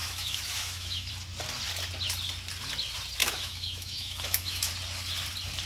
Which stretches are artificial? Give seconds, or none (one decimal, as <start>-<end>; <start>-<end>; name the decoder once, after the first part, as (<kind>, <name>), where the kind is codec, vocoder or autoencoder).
0.0-1.1 (autoencoder, DAC-VAE); 3.2-4.7